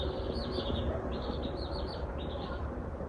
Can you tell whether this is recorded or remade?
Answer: remade